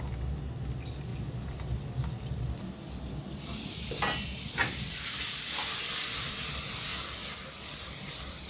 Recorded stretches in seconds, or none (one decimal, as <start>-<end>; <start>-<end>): 0.0-8.5